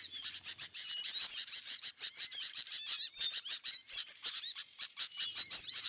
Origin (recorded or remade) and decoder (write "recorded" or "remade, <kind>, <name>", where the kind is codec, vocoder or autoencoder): remade, vocoder, BigVGAN v2